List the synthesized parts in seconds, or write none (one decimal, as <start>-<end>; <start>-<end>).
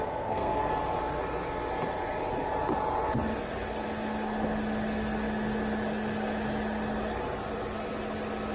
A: 0.0-0.7